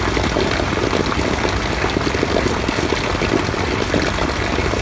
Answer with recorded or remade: recorded